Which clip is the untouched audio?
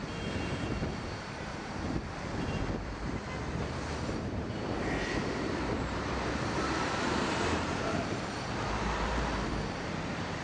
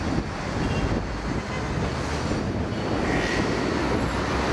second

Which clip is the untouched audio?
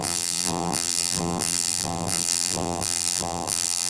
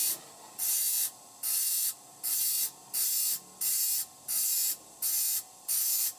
second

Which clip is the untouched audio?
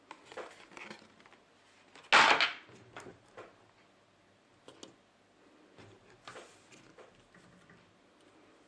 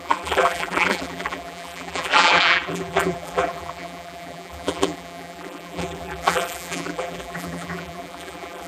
first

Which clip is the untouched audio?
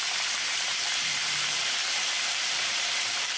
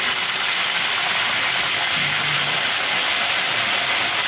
second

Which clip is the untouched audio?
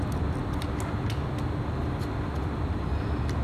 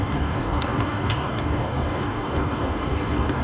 first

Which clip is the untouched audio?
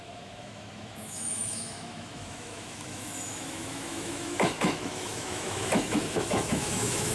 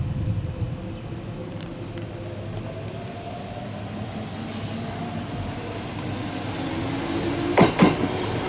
second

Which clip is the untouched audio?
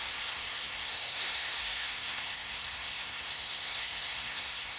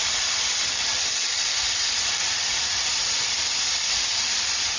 second